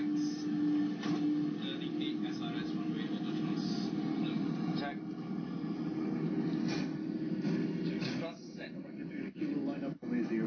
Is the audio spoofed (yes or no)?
no